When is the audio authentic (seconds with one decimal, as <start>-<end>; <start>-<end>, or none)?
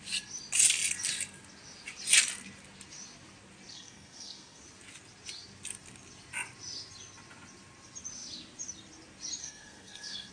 0.0-3.7; 4.6-9.4